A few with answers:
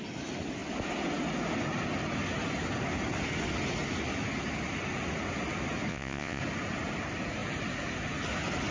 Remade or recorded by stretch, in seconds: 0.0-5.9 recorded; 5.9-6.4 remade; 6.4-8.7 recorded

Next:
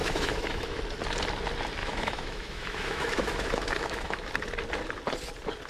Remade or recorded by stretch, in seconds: 0.0-0.8 remade; 0.8-1.8 recorded; 1.8-4.3 remade; 4.3-5.7 recorded

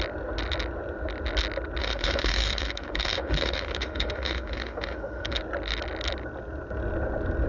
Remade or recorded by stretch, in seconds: 0.0-1.8 recorded; 1.8-5.4 remade; 5.4-7.5 recorded

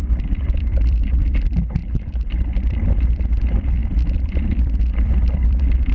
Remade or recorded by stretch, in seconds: 0.0-1.2 remade; 1.2-1.8 recorded; 1.8-3.4 remade; 3.4-3.8 recorded; 3.8-5.9 remade

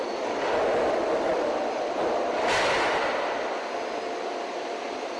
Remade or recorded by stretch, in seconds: 0.0-5.2 recorded

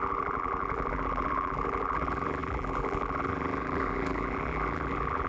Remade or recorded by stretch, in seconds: 0.0-5.3 remade